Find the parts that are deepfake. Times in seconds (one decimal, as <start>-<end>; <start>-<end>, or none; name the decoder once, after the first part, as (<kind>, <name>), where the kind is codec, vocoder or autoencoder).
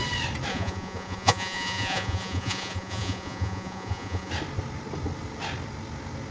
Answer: 0.5-4.3 (vocoder, Vocos)